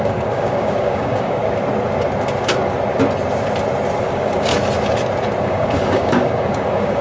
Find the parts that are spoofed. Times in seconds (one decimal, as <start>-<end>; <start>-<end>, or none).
0.0-1.4; 4.0-4.5; 5.4-7.0